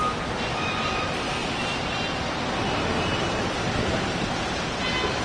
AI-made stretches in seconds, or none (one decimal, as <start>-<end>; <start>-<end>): 0.5-1.1